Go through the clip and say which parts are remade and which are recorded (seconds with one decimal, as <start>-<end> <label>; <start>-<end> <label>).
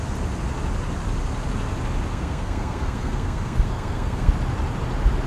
0.0-2.1 recorded; 2.1-4.3 remade; 4.3-5.3 recorded